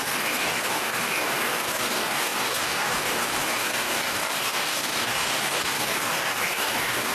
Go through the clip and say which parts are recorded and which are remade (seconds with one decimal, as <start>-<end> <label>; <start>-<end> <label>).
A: 0.0-7.1 remade